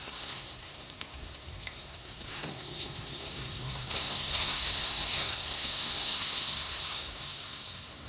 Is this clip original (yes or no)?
no